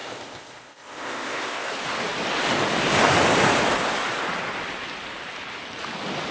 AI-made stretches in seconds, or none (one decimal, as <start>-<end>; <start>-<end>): 0.0-1.7